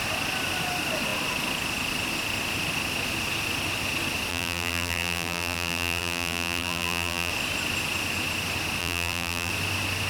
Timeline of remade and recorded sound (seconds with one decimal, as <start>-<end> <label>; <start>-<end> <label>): 0.0-4.3 recorded; 4.3-7.3 remade; 7.3-8.8 recorded; 8.8-9.5 remade; 9.5-10.1 recorded

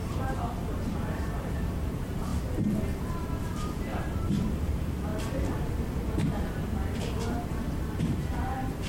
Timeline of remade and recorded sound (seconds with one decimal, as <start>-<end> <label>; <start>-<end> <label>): 0.0-2.3 remade; 2.3-3.4 recorded; 3.4-5.1 remade; 5.1-8.0 recorded; 8.0-8.9 remade

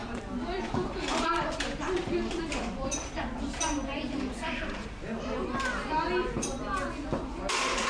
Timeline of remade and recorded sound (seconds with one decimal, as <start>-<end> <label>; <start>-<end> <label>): 0.0-4.6 remade; 4.6-7.9 recorded

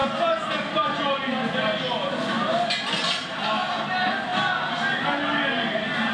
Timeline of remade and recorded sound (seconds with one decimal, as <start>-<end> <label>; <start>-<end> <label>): 0.0-6.1 recorded

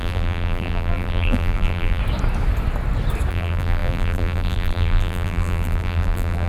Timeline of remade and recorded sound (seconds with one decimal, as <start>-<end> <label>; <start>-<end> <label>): 0.0-2.0 remade; 2.0-3.3 recorded; 3.3-6.5 remade

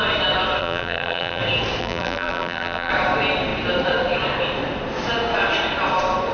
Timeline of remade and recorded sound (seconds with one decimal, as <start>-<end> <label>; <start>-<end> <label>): 0.0-0.6 recorded; 0.6-1.4 remade; 1.4-1.8 recorded; 1.8-2.9 remade; 2.9-6.3 recorded

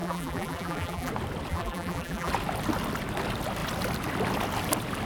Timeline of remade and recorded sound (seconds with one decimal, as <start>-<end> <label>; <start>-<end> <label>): 0.0-1.1 remade; 1.1-1.5 recorded; 1.5-2.3 remade; 2.3-5.1 recorded